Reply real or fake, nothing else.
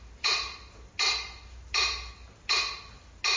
real